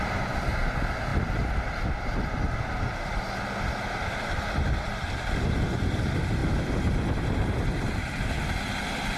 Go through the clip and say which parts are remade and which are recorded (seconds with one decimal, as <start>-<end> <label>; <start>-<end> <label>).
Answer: 0.0-9.2 recorded